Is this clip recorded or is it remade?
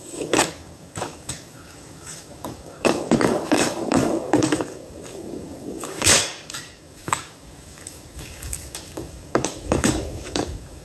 remade